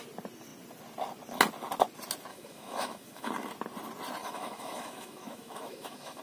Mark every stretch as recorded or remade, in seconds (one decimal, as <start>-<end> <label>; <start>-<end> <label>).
0.0-2.3 recorded; 2.3-3.3 remade; 3.3-4.2 recorded; 4.2-6.2 remade